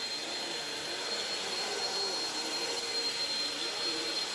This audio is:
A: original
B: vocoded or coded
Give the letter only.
A